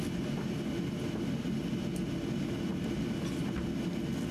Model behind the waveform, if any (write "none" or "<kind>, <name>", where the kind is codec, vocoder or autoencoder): none